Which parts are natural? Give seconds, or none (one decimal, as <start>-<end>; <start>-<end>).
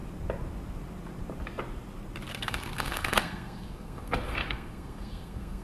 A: 0.0-2.3